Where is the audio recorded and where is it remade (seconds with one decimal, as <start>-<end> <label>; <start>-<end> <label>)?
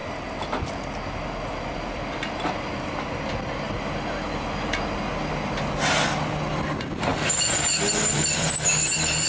0.0-9.3 recorded